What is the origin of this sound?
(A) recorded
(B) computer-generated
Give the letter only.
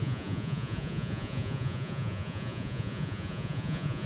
B